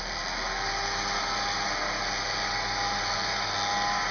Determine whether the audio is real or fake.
real